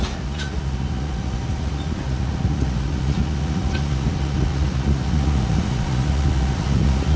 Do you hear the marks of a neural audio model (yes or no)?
yes